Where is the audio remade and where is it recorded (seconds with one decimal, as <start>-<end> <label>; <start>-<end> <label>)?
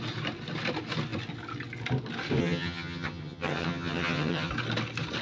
0.0-2.4 recorded; 2.4-4.5 remade; 4.5-5.2 recorded